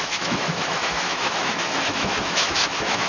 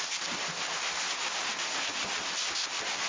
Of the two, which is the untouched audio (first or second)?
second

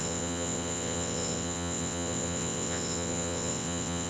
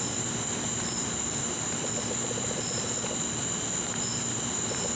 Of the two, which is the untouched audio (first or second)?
second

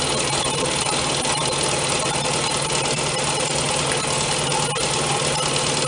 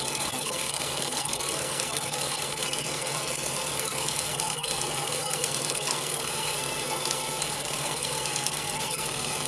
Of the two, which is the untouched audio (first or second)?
first